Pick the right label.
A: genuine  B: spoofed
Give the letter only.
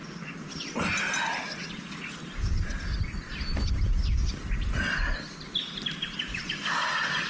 A